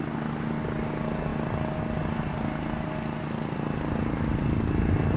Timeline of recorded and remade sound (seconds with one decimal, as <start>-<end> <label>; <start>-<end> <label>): 0.0-5.2 recorded